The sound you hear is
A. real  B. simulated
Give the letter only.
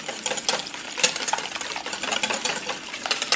A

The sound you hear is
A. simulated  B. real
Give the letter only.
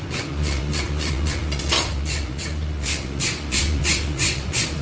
A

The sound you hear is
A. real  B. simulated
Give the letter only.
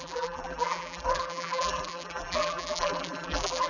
B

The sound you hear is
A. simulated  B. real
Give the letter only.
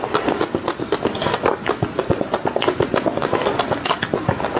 B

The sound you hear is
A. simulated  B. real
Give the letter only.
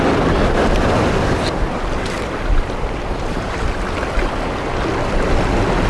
B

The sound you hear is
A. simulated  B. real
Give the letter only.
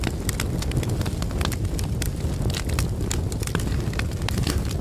B